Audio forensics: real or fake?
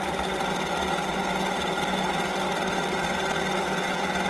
real